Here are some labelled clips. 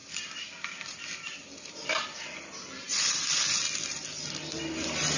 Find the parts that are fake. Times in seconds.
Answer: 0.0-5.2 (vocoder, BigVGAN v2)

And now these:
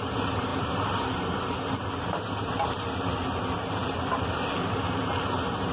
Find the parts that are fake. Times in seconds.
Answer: 0.5-2.8 (vocoder, BigVGAN v2); 3.8-4.7

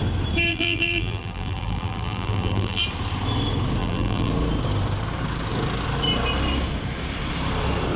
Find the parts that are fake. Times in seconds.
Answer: 0.5-2.8 (vocoder, BigVGAN v2); 3.8-4.3

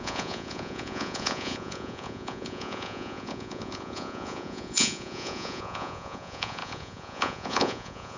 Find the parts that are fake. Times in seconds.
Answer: 0.0-8.2 (vocoder, Vocos)

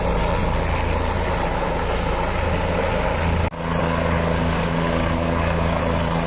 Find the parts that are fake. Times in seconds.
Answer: 3.8-5.8 (codec, DAC)

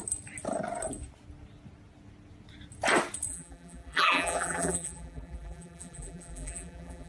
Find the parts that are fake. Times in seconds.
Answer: 3.3-7.1 (vocoder, BigVGAN v2)

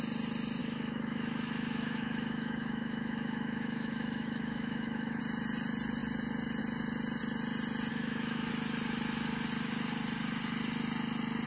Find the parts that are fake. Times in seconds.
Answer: 0.6-5.2 (autoencoder, DAC-VAE); 7.9-8.5

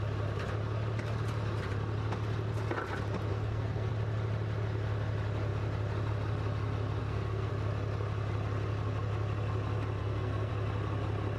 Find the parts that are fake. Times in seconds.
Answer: 3.3-3.9 (codec, SNAC); 7.0-7.5; 10.0-10.5